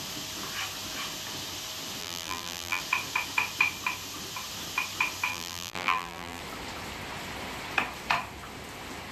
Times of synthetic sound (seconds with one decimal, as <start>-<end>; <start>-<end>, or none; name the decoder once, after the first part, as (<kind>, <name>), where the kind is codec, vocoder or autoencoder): 2.0-2.8 (vocoder, BigVGAN v2); 5.3-6.4